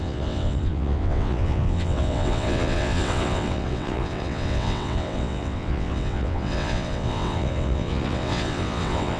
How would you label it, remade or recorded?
remade